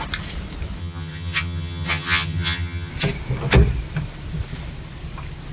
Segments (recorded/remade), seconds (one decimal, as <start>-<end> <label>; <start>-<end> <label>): 0.0-0.8 recorded; 0.8-2.9 remade; 2.9-5.5 recorded